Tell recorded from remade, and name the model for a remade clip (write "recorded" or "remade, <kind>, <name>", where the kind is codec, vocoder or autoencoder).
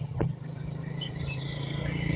remade, vocoder, BigVGAN v2